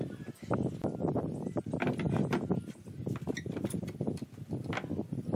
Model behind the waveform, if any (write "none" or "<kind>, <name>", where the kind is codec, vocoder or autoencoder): none